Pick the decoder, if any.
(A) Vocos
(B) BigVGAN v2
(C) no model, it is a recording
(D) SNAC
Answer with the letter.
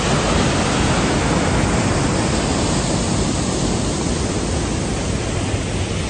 C